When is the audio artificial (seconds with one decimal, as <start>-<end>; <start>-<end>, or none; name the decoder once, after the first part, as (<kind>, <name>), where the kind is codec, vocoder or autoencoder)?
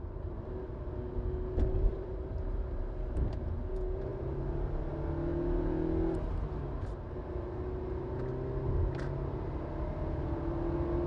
1.9-2.8 (vocoder, BigVGAN v2); 4.1-4.8